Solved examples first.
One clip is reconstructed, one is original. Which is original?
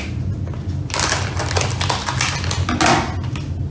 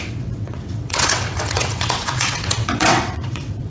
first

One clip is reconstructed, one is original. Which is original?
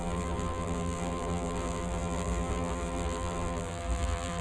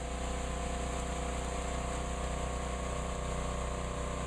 second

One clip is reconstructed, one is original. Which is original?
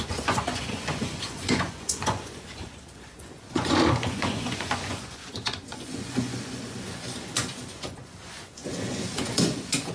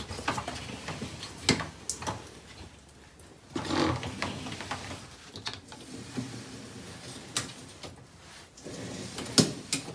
second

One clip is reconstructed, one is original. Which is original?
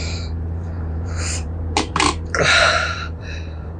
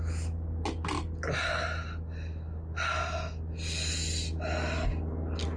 second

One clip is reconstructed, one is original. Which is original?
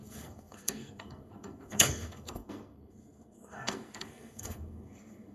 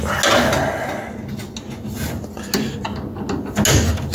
second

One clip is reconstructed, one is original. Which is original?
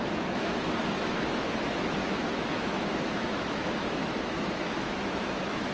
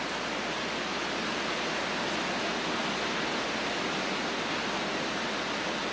second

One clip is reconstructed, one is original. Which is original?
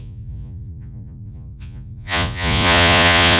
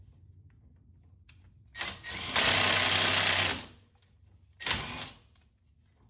second